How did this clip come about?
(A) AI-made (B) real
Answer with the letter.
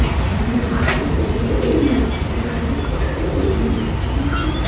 B